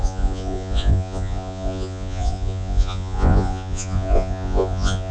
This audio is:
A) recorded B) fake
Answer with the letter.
B